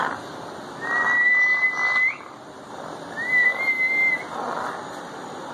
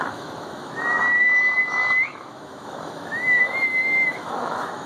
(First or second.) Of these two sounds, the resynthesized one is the second